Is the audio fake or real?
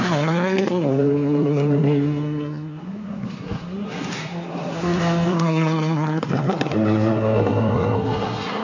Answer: fake